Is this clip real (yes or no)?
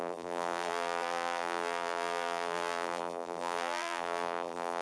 no